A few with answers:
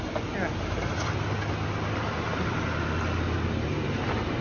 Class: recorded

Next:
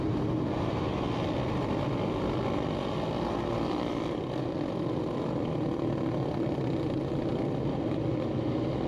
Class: recorded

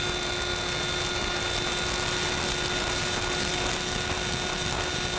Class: recorded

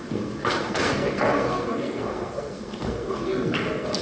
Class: remade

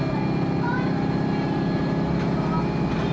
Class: recorded